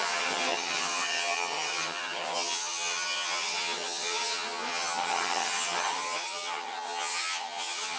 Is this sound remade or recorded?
remade